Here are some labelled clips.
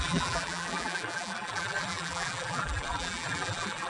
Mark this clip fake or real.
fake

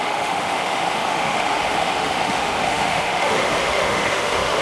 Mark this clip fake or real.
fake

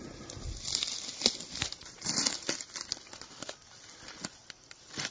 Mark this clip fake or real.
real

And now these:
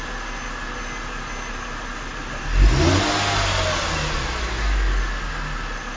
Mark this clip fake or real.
real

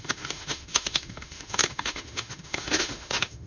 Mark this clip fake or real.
fake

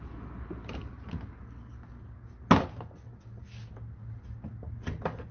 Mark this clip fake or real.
real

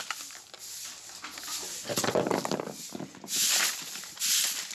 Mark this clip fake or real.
real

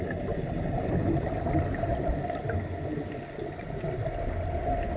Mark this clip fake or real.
real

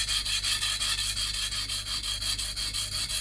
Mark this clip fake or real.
real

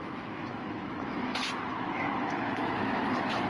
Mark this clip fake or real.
fake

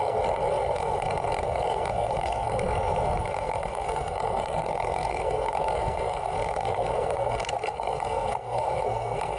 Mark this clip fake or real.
fake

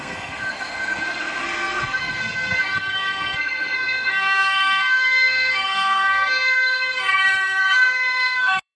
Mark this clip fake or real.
fake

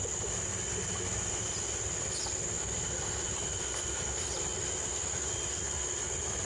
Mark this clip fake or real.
real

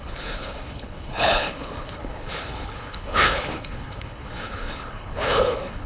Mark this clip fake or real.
fake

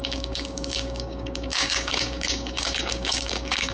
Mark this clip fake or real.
fake